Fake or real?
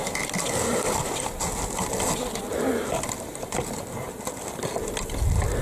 real